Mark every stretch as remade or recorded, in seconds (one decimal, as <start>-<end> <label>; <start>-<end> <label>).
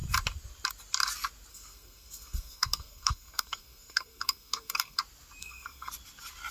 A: 0.0-1.5 recorded; 1.5-5.0 remade; 5.0-5.4 recorded; 5.4-5.9 remade; 5.9-6.5 recorded